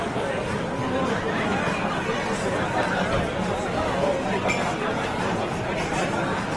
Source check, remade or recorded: recorded